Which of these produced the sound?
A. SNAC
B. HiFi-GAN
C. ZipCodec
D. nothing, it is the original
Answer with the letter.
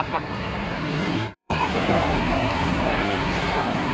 A